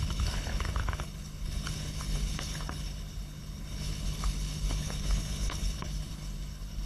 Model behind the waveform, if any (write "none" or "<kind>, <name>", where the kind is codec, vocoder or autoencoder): codec, HILCodec